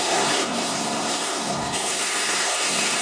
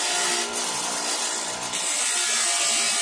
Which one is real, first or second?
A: second